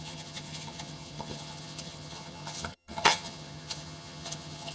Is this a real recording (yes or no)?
no